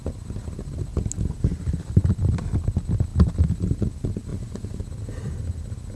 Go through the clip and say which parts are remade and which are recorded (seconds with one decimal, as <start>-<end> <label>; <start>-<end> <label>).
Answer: 0.0-4.3 recorded; 4.3-4.8 remade; 4.8-6.0 recorded

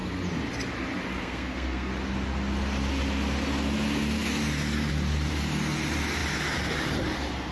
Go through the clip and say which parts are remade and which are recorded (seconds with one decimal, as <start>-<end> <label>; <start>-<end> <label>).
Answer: 0.0-1.1 recorded; 1.1-1.9 remade; 1.9-7.5 recorded

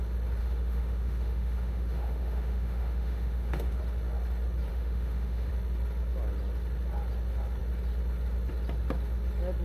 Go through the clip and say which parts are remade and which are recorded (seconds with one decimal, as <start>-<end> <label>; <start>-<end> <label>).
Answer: 0.0-0.4 recorded; 0.4-3.8 remade; 3.8-4.7 recorded; 4.7-5.5 remade; 5.5-9.6 recorded

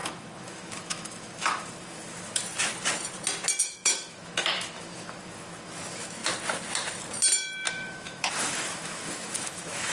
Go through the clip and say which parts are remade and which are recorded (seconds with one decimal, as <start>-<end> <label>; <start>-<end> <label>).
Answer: 0.0-2.4 remade; 2.4-3.6 recorded; 3.6-6.2 remade; 6.2-7.7 recorded; 7.7-9.9 remade

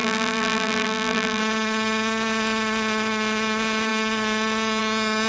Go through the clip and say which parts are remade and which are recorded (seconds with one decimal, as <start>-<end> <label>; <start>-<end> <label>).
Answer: 0.0-1.4 remade; 1.4-5.3 recorded

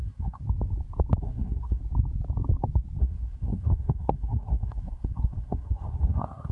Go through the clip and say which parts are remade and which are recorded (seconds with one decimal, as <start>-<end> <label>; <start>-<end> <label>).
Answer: 0.0-0.4 remade; 0.4-1.2 recorded; 1.2-1.8 remade; 1.8-3.0 recorded; 3.0-6.5 remade

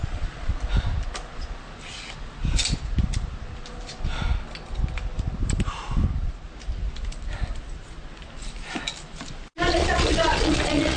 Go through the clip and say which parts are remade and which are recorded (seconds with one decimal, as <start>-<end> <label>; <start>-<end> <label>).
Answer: 0.0-0.5 remade; 0.5-9.7 recorded; 9.7-11.0 remade